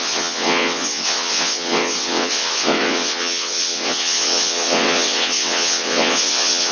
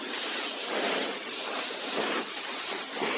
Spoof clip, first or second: first